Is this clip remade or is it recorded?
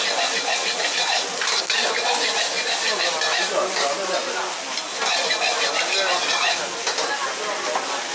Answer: recorded